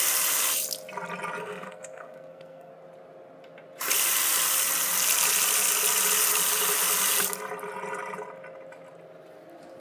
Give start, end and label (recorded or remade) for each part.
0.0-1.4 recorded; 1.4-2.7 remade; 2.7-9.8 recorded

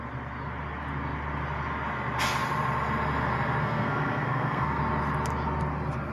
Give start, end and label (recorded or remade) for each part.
0.0-3.6 recorded; 3.6-4.8 remade; 4.8-6.1 recorded

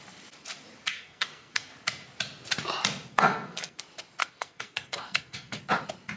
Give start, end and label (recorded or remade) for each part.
0.0-0.9 recorded; 0.9-1.7 remade; 1.7-3.1 recorded; 3.1-3.8 remade; 3.8-4.2 recorded; 4.2-5.6 remade; 5.6-6.2 recorded